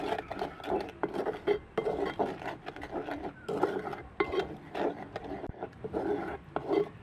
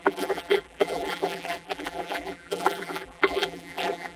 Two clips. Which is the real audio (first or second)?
first